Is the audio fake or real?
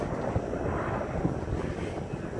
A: real